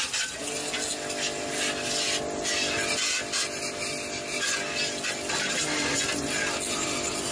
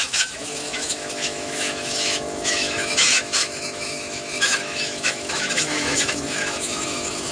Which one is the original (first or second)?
first